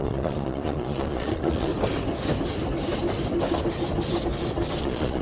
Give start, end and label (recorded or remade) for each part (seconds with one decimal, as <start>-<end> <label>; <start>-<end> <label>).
0.0-1.7 remade; 1.7-4.8 recorded; 4.8-5.2 remade